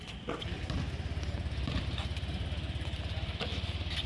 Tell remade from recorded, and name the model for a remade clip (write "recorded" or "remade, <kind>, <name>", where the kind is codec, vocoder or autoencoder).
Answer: recorded